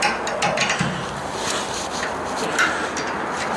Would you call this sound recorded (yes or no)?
yes